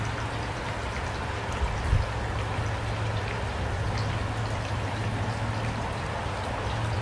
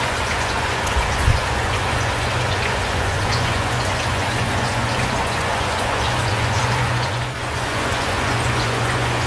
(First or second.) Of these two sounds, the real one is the first